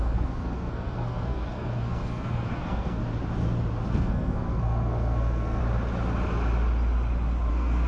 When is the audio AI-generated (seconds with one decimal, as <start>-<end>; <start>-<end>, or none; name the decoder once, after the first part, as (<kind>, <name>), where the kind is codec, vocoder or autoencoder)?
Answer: 0.0-3.0 (codec, SNAC); 3.9-5.6; 7.5-7.9